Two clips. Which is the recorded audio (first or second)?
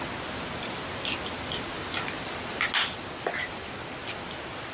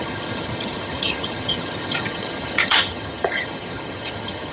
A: first